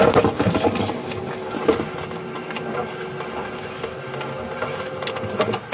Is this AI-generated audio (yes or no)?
no